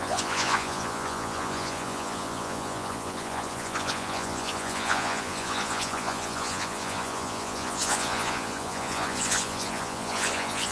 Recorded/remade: remade